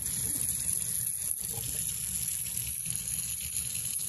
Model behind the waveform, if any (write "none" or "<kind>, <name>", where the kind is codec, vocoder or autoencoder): none